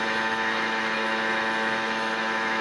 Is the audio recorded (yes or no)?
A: no